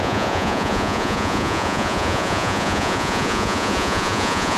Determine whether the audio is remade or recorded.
remade